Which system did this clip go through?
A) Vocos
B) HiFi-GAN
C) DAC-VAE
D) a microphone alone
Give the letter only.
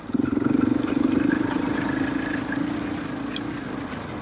D